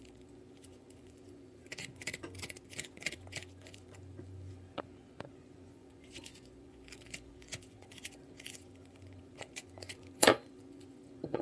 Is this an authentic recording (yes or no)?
no